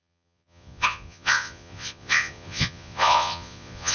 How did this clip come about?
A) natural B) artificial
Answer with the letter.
B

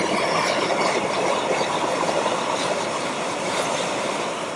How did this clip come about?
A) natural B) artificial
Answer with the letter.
A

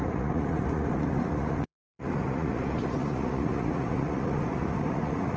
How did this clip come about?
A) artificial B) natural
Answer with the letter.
A